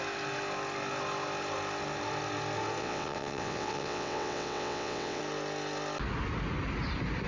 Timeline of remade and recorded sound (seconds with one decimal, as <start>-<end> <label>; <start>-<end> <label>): 0.0-2.8 recorded; 2.8-5.2 remade; 5.2-7.3 recorded